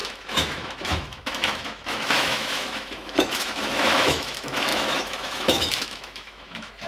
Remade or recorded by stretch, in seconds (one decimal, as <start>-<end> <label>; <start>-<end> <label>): 0.0-6.9 remade